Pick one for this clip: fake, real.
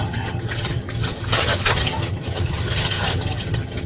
fake